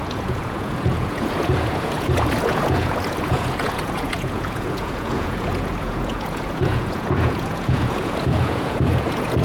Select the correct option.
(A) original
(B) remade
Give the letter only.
B